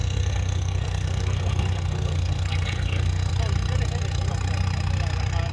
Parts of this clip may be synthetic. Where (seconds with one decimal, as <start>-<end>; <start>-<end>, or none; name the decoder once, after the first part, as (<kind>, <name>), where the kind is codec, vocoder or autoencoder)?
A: 0.0-3.3 (codec, SNAC)